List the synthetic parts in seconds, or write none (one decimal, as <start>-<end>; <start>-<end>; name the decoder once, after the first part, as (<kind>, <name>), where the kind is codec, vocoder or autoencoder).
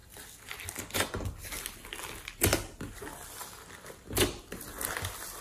none